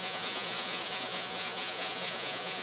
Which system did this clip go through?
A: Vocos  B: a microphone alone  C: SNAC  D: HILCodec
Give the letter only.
A